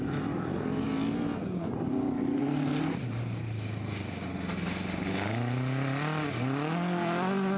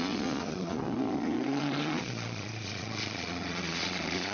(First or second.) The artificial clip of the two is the second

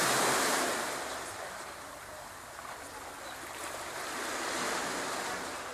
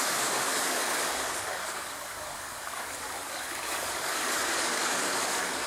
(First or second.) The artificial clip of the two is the second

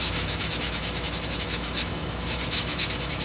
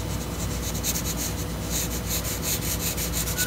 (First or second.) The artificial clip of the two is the first